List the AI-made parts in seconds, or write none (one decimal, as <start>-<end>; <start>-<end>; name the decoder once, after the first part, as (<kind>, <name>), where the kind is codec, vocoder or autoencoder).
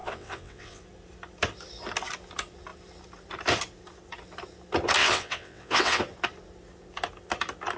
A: 0.0-0.8 (vocoder, WaveNeXt); 5.0-6.0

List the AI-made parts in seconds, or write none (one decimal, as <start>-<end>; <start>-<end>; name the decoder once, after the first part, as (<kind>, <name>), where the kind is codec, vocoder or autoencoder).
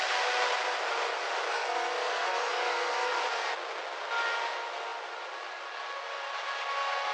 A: 1.5-3.1 (codec, SNAC)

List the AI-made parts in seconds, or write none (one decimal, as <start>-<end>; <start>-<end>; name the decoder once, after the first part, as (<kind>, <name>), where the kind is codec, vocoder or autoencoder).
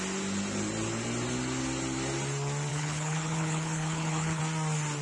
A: 2.7-4.4 (codec, HILCodec)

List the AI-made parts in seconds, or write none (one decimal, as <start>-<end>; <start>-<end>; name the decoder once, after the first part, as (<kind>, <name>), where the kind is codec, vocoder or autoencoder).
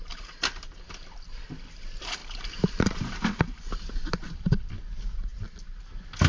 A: 2.2-4.7 (vocoder, BigVGAN v2)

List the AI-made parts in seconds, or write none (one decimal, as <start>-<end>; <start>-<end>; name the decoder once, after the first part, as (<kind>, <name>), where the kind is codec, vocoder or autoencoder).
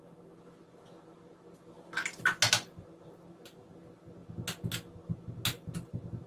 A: none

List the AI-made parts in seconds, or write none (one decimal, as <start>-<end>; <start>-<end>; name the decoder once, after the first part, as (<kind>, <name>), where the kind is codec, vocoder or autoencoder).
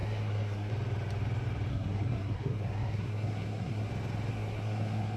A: 0.0-0.7 (codec, SNAC); 1.7-3.9; 4.3-5.2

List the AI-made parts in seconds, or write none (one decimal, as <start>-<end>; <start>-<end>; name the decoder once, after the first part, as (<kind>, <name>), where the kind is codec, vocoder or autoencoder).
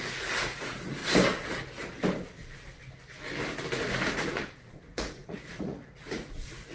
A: 0.0-1.0 (vocoder, Vocos); 3.9-6.7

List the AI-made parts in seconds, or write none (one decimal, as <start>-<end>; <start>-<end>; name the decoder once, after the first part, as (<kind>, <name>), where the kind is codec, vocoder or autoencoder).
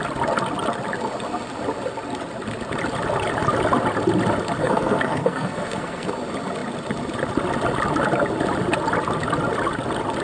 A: 4.6-6.1 (codec, SNAC)